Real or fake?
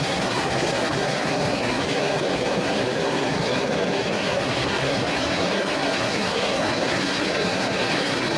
fake